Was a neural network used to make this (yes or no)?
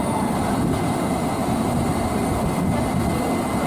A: no